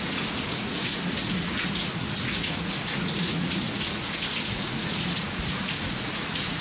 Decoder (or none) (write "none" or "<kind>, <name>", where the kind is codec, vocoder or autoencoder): vocoder, Vocos